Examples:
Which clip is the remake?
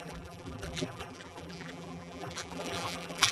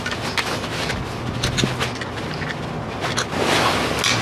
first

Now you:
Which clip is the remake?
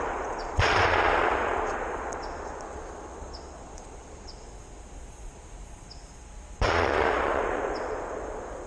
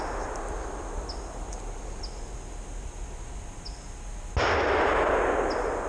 first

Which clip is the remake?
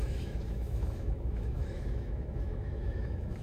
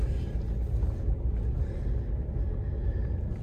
first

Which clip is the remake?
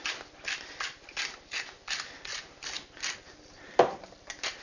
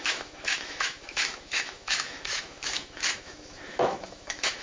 second